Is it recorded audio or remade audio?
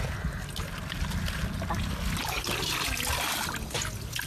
recorded